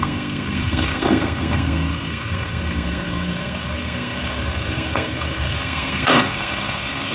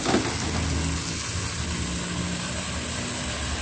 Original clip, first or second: second